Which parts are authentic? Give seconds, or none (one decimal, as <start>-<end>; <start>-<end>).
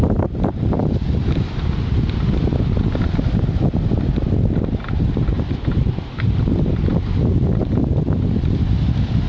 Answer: 0.0-9.3